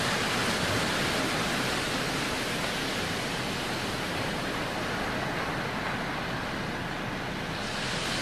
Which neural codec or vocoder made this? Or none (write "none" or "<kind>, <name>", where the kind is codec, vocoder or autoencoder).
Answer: none